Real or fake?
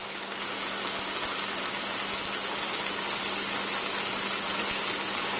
real